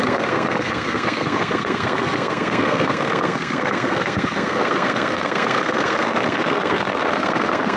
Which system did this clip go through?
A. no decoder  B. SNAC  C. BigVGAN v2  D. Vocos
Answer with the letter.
B